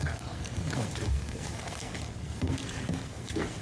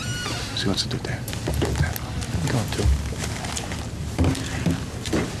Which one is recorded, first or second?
second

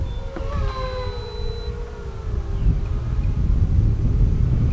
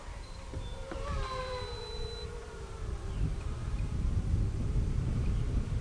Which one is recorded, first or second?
first